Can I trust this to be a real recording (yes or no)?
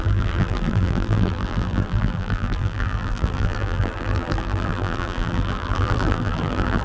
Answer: no